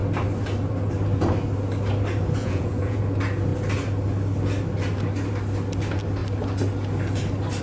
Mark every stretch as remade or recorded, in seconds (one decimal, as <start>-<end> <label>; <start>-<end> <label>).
0.0-2.4 recorded; 2.4-3.0 remade; 3.0-7.6 recorded